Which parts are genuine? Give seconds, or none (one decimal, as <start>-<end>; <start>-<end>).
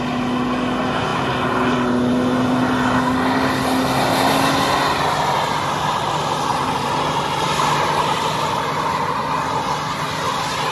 0.0-10.7